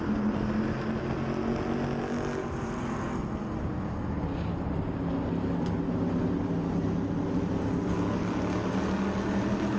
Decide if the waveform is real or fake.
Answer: real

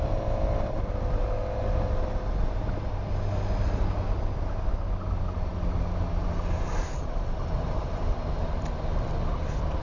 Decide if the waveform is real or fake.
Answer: real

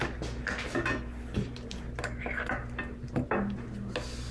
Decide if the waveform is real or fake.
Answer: real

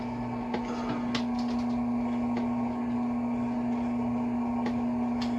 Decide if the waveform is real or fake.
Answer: real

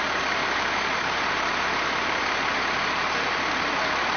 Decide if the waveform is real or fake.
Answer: real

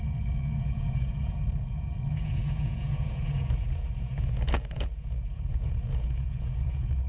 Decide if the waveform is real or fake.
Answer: fake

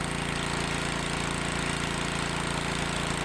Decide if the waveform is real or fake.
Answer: real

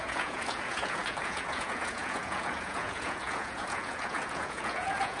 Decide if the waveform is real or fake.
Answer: fake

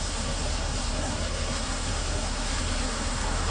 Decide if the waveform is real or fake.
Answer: fake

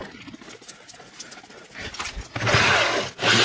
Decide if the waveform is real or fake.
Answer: real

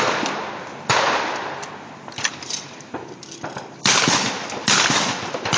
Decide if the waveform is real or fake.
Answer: fake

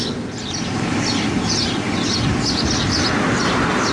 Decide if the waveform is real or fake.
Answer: fake